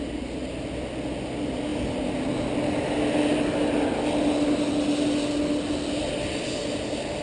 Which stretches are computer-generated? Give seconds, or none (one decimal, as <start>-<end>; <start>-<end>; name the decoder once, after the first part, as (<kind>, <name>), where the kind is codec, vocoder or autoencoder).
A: none